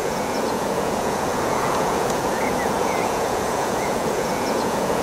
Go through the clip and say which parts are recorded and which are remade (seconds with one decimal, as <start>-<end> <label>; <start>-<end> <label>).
0.0-5.0 remade